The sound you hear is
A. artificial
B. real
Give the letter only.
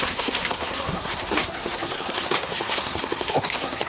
A